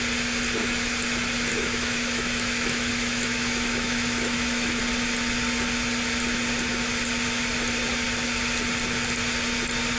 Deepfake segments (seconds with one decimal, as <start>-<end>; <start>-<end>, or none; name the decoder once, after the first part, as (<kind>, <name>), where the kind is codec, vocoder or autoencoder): 1.5-4.8 (autoencoder, DAC-VAE)